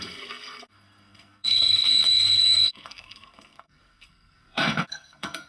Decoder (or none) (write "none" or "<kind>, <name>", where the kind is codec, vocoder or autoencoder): codec, SNAC